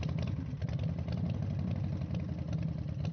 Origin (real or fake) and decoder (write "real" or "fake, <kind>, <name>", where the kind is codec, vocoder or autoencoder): real